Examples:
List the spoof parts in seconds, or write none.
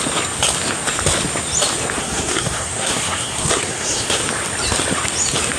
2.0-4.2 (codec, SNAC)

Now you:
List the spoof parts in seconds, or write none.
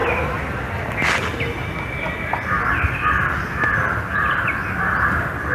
none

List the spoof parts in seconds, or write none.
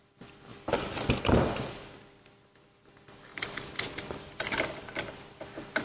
none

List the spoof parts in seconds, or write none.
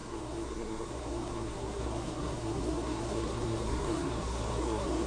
0.0-5.1 (codec, SNAC)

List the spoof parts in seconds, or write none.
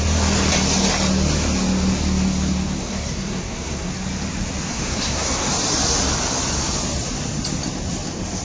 2.8-3.9 (codec, SNAC); 4.7-5.5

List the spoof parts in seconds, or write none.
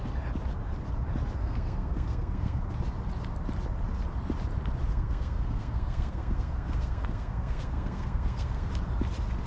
1.4-2.6 (codec, SNAC); 4.9-8.7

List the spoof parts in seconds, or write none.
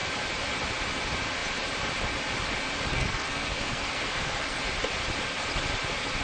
2.9-4.6 (codec, SNAC)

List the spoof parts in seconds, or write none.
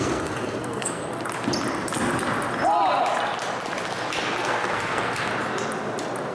0.0-1.0 (codec, SNAC); 4.4-5.3